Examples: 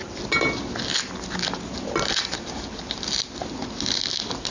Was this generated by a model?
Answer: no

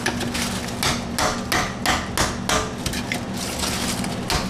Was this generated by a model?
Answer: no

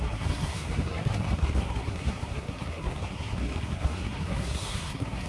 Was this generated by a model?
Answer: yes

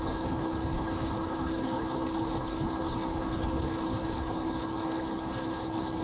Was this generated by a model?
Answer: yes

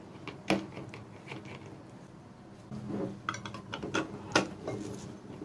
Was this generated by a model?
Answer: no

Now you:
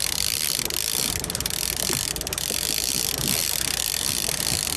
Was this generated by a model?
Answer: no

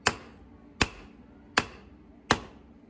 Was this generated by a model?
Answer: no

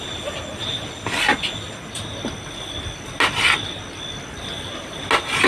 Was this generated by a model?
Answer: no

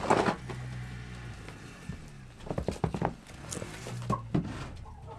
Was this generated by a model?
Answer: no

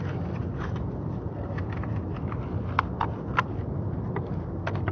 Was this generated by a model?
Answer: no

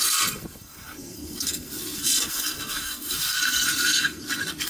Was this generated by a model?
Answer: yes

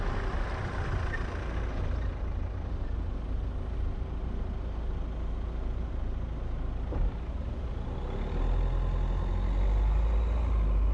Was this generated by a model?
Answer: no